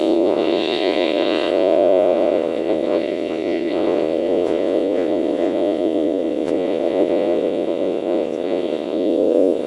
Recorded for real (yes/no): no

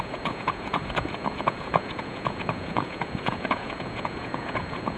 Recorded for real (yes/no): no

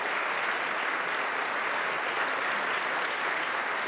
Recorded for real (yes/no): yes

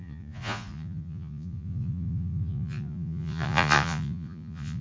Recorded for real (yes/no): no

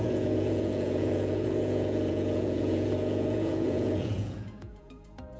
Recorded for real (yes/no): no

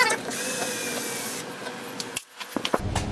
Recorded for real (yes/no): no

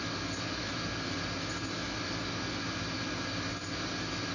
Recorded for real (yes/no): yes